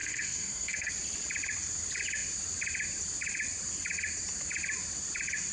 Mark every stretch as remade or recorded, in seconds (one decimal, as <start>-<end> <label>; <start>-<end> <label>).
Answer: 0.0-0.9 remade; 0.9-5.5 recorded